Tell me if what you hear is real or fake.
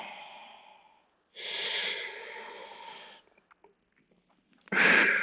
real